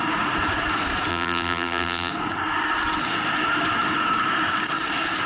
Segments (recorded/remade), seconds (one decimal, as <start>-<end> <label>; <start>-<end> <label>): 0.0-1.1 recorded; 1.1-2.1 remade; 2.1-5.3 recorded